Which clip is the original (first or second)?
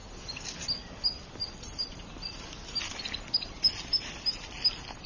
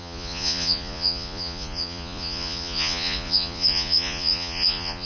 first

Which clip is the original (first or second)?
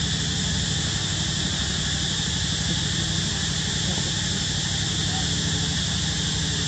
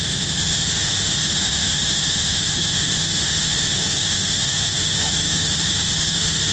first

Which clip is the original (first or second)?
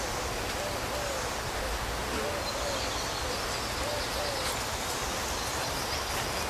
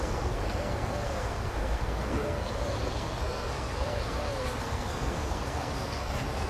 first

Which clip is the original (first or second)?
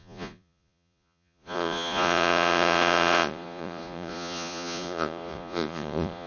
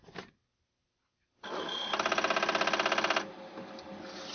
second